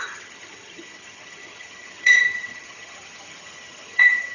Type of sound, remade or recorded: remade